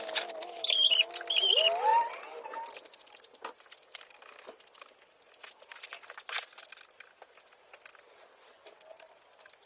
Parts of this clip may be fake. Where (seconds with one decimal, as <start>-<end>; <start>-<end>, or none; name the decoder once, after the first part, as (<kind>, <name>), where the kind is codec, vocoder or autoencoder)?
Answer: none